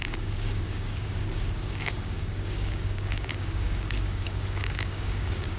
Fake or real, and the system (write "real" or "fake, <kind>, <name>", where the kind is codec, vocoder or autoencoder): fake, codec, DAC